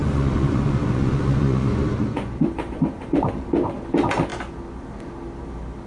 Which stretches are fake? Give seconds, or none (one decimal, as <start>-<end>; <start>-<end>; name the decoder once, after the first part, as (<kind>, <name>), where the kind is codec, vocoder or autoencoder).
0.0-3.5 (vocoder, Vocos)